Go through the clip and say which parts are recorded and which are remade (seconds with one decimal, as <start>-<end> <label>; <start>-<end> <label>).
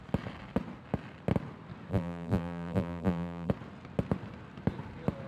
0.0-1.9 recorded; 1.9-3.5 remade; 3.5-5.3 recorded